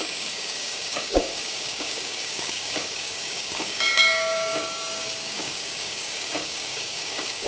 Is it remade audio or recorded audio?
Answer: remade